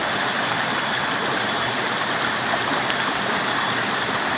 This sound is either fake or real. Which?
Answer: real